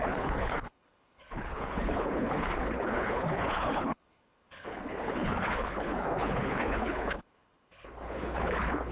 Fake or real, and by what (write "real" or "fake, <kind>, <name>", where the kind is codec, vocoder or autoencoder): fake, codec, HILCodec